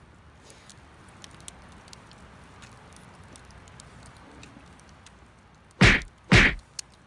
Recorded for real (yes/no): yes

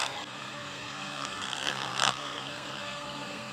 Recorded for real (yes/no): no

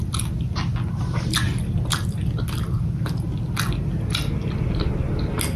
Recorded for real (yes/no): yes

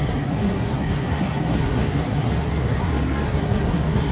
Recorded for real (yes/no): no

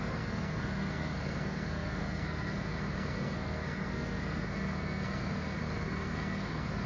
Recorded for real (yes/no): no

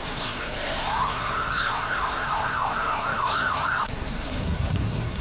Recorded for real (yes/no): no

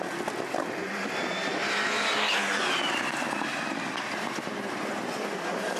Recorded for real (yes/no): yes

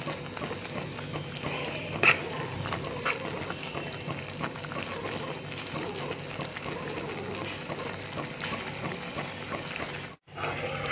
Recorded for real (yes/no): yes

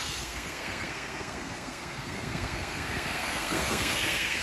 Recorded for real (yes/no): no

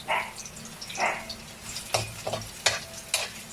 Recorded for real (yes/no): yes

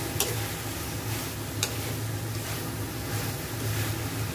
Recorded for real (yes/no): yes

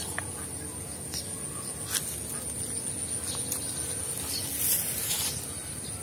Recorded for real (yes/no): yes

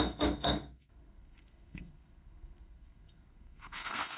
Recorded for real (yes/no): no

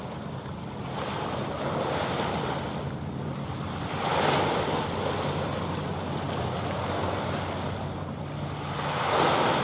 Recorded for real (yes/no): yes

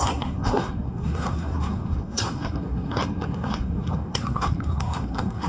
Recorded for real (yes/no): no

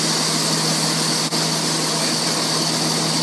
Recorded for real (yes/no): yes